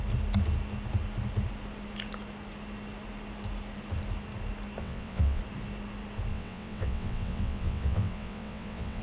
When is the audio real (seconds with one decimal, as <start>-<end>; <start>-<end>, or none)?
0.0-4.8; 5.4-6.3